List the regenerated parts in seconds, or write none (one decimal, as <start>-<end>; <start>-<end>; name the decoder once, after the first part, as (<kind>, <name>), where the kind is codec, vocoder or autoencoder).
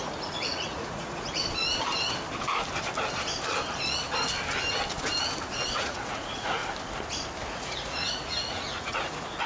0.0-1.4 (vocoder, Vocos); 5.7-6.6; 7.5-9.5